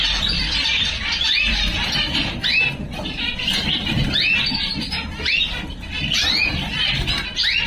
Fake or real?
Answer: fake